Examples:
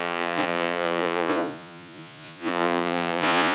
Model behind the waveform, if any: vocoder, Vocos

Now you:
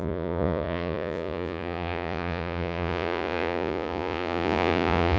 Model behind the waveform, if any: vocoder, Vocos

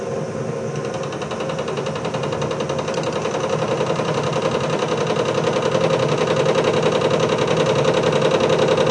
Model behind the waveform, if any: none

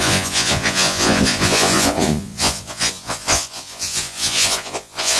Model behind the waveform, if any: vocoder, Vocos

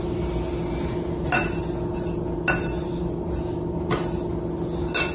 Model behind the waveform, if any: none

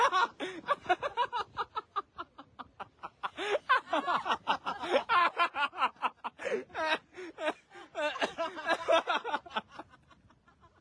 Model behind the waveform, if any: none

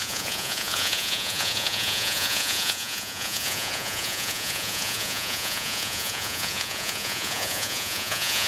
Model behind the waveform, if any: vocoder, Vocos